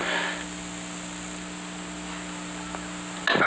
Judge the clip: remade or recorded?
recorded